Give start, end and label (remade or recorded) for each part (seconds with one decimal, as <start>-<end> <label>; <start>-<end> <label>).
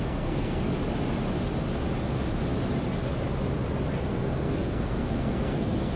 0.0-0.7 remade; 0.7-4.0 recorded; 4.0-6.0 remade